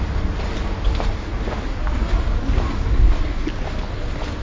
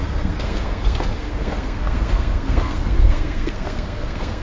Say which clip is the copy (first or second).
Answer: second